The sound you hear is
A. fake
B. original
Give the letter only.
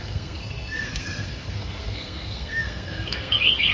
A